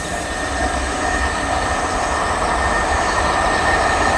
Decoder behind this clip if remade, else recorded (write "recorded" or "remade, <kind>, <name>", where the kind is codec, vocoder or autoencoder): remade, vocoder, BigVGAN v2